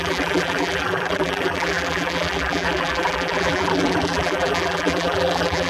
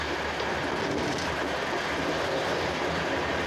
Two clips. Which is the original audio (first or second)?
second